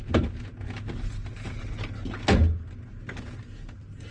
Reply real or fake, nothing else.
real